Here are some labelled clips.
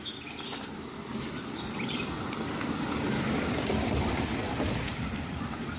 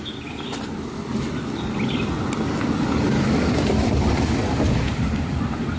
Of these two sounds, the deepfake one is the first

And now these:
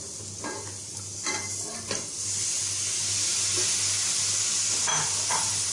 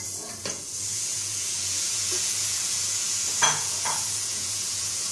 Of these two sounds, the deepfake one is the second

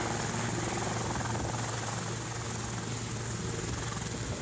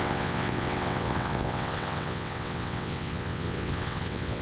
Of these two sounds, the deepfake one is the second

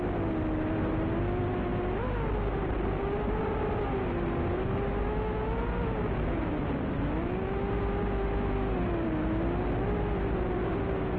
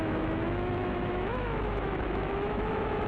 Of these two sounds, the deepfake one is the second